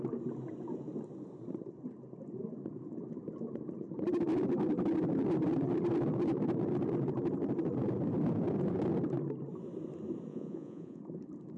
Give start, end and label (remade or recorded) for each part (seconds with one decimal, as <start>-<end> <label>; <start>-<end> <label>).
0.0-10.3 recorded; 10.3-11.0 remade; 11.0-11.6 recorded